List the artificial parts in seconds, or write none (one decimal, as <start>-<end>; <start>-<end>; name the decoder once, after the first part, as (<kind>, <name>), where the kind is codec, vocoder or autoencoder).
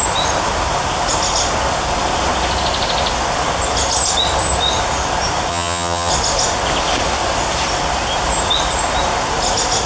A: 5.5-6.1 (vocoder, HiFi-GAN)